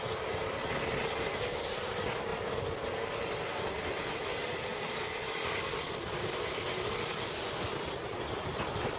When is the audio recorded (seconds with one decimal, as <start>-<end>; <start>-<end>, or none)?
0.0-2.3; 3.0-4.7; 6.5-9.0